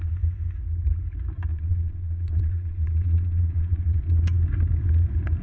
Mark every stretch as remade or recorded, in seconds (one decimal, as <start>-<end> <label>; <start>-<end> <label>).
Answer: 0.0-1.5 recorded; 1.5-4.0 remade; 4.0-5.4 recorded